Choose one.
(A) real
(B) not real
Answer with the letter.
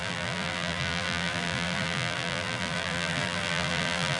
B